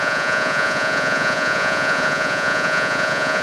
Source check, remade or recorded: remade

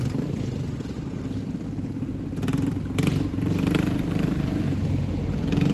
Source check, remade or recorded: recorded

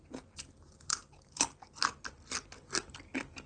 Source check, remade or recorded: recorded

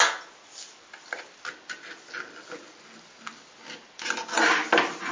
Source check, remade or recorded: recorded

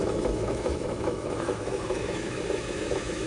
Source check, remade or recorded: remade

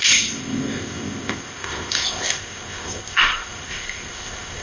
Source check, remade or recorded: remade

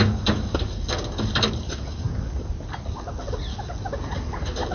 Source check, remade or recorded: recorded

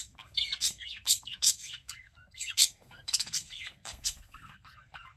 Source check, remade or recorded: remade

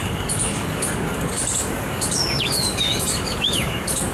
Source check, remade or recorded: remade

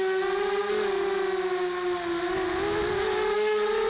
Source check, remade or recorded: recorded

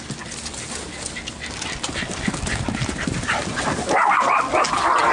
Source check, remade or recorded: recorded